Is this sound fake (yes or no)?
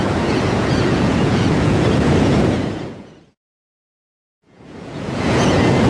yes